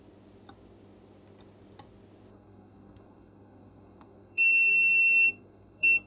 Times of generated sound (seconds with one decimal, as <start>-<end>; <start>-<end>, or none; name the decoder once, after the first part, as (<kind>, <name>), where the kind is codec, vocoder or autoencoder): 2.3-6.1 (codec, SNAC)